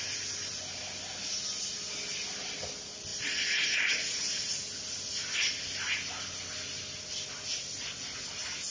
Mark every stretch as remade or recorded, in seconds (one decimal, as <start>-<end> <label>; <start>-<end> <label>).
0.0-8.7 recorded